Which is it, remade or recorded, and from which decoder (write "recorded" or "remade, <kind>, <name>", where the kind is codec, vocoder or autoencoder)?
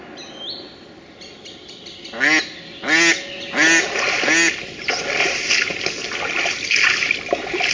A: recorded